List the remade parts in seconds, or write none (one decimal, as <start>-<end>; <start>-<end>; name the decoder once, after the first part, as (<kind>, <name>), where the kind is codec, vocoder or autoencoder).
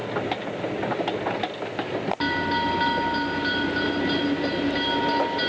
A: none